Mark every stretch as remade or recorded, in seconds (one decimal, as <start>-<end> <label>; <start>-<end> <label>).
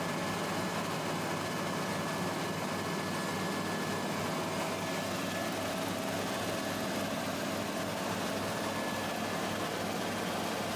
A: 0.0-10.8 recorded